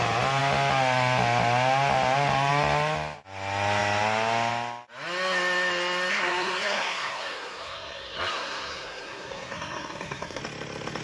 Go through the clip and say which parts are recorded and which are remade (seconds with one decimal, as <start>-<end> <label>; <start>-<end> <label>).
0.0-6.1 recorded; 6.1-10.4 remade; 10.4-11.0 recorded